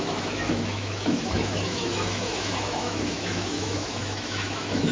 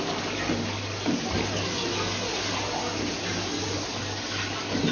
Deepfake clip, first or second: first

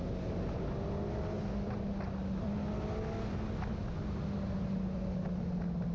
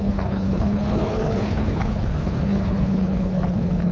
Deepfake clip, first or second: second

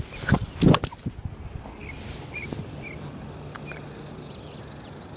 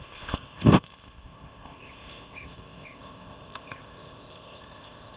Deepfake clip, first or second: second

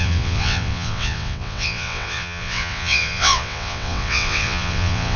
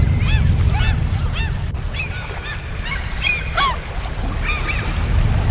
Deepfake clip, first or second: first